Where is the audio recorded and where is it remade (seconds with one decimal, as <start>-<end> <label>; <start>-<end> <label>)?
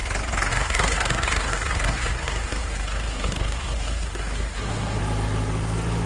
0.0-0.5 recorded; 0.5-5.0 remade; 5.0-6.1 recorded